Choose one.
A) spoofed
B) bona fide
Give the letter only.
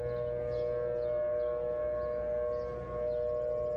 B